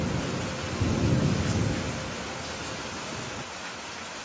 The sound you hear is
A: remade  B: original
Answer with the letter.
B